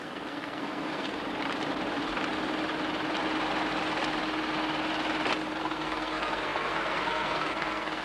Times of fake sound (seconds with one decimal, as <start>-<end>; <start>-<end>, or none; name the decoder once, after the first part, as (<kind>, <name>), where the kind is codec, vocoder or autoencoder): 0.0-1.2 (codec, SNAC); 5.6-8.0